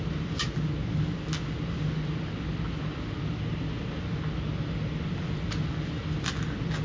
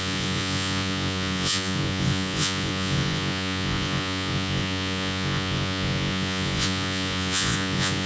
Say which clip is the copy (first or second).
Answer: second